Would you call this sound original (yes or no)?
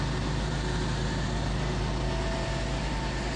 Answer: yes